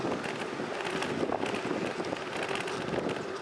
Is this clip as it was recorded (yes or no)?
yes